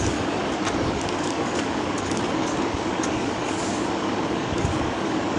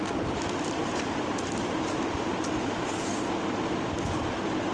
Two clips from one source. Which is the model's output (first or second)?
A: first